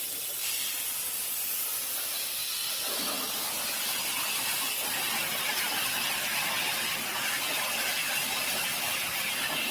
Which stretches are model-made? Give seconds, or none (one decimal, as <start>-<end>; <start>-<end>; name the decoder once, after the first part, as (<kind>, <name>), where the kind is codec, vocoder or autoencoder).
none